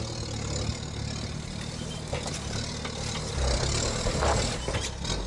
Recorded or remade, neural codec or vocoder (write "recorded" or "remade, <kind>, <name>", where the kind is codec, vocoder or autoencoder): recorded